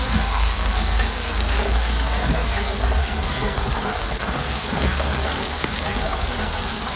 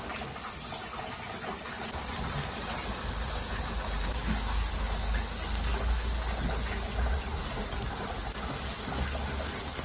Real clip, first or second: second